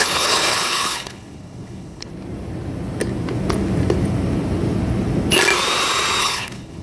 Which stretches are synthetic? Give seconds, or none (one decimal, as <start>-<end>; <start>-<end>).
0.0-2.1; 6.2-6.8